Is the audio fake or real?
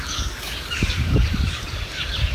fake